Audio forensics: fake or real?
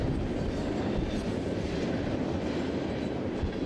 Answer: real